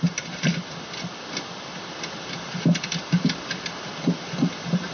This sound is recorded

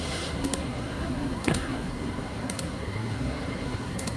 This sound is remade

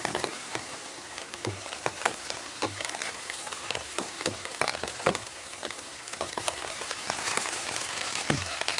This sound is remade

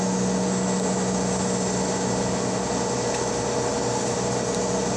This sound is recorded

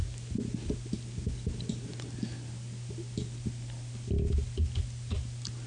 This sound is recorded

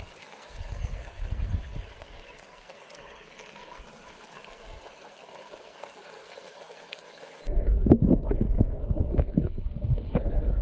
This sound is remade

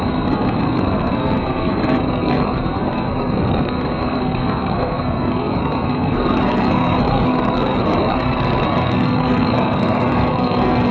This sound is remade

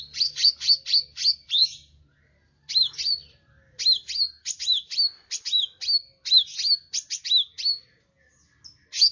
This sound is recorded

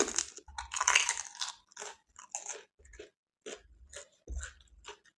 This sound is recorded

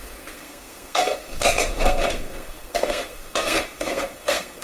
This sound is remade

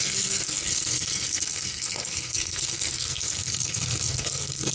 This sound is remade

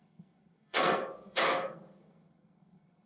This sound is remade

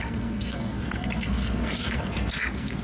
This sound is remade